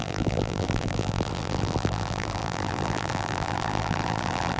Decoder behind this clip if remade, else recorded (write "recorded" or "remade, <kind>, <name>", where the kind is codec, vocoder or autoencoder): remade, vocoder, BigVGAN v2